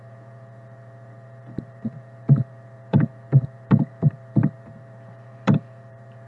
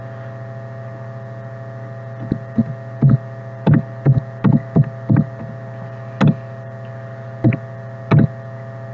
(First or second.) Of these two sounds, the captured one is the second